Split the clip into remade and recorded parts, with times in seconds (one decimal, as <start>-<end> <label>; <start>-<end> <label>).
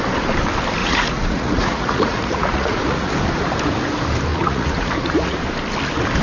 0.0-0.8 recorded; 0.8-3.1 remade; 3.1-4.3 recorded; 4.3-5.4 remade; 5.4-6.2 recorded